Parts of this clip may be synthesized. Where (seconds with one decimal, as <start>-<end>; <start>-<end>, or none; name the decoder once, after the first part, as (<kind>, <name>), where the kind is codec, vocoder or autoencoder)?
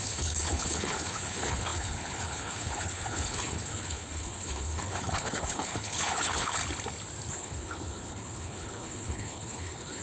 0.0-6.6 (codec, HILCodec); 7.3-10.0